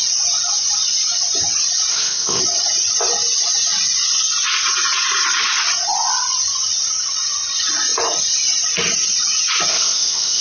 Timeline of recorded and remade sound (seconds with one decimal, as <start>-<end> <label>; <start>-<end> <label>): 0.0-1.9 recorded; 1.9-2.4 remade; 2.4-9.7 recorded; 9.7-10.4 remade